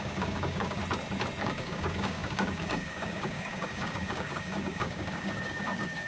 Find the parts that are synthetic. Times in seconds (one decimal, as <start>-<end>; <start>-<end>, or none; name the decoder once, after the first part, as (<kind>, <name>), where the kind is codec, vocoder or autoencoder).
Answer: 0.0-0.8 (codec, DAC); 1.4-6.1